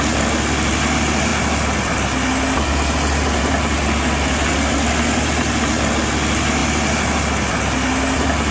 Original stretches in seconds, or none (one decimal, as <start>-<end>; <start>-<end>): 0.0-8.5